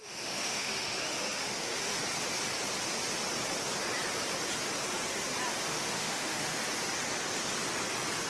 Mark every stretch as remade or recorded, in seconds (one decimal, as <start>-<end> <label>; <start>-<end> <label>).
0.0-2.0 remade; 2.0-5.7 recorded; 5.7-6.6 remade; 6.6-8.3 recorded